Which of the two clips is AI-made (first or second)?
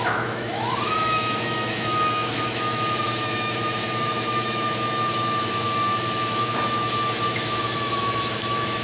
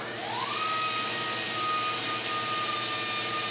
first